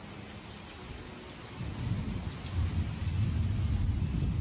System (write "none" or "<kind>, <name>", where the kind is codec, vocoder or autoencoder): none